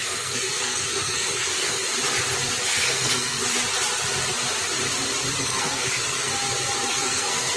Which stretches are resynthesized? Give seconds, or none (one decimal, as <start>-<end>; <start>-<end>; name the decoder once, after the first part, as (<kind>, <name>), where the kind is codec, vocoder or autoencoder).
0.0-1.8 (codec, SNAC); 2.6-3.4; 5.4-6.3; 6.9-7.6

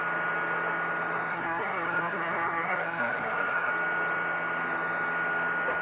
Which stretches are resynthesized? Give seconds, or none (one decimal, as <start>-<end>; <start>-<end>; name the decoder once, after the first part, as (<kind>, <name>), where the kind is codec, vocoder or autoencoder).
1.3-3.7 (codec, SNAC)

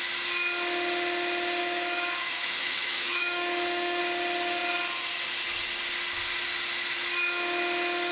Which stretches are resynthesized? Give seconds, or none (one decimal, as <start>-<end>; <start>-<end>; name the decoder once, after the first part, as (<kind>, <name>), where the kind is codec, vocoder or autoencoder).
1.6-4.0 (autoencoder, DAC-VAE)

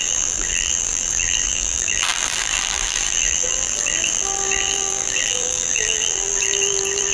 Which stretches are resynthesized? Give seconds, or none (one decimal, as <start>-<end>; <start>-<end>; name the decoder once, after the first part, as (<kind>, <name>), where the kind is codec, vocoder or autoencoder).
0.0-7.1 (vocoder, BigVGAN v2)

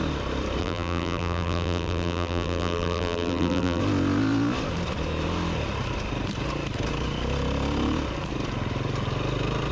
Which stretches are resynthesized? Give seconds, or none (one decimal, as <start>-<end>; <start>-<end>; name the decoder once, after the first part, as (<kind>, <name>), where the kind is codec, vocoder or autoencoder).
0.6-3.8 (vocoder, BigVGAN v2)

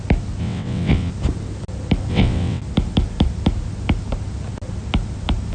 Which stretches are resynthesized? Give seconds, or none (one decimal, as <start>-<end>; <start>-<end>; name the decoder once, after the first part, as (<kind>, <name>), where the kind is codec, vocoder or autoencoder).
0.4-1.1 (vocoder, WaveNeXt); 2.1-2.6